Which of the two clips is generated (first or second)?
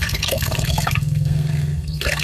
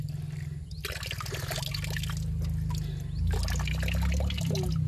first